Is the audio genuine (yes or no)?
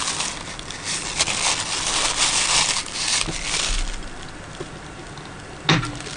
yes